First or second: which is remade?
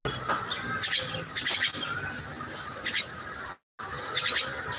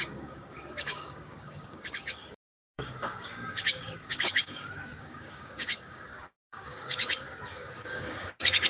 second